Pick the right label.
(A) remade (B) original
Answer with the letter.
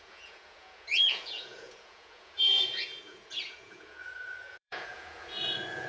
A